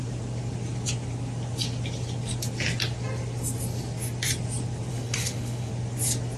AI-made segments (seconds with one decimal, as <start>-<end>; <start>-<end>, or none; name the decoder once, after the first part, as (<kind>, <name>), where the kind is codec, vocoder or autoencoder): 4.9-5.7 (autoencoder, DAC-VAE)

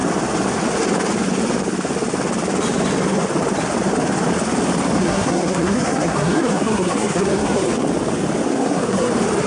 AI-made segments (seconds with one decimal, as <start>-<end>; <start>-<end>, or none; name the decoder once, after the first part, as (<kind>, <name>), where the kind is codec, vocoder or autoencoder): 5.0-7.7 (codec, SNAC); 8.5-9.1

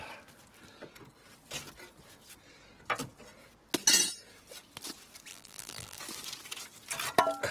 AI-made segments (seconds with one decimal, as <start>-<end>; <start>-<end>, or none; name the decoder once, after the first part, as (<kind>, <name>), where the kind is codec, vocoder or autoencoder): 5.3-6.0 (vocoder, BigVGAN v2)

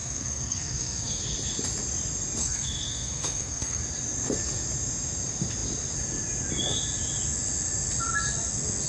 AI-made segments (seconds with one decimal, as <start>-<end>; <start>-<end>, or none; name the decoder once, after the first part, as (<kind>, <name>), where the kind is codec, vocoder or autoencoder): 0.0-1.2 (codec, SNAC); 2.4-3.8

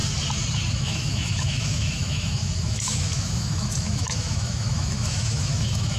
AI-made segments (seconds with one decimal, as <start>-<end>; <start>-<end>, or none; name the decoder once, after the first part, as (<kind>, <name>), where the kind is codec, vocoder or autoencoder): 0.7-6.0 (autoencoder, DAC-VAE)

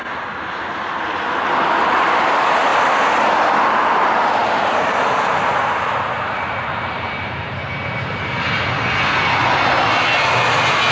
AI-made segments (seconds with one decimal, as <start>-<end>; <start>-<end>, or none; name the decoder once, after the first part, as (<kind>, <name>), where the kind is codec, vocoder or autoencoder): 4.4-8.6 (vocoder, BigVGAN v2)

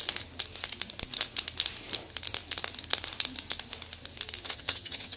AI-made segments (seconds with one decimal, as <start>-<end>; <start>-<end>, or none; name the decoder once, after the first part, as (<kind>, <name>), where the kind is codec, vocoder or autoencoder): 4.4-5.2 (vocoder, HiFi-GAN)